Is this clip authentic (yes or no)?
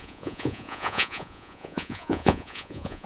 no